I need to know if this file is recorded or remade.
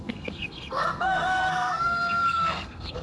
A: remade